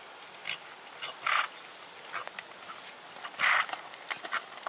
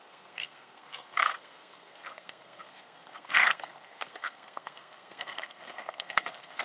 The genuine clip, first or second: first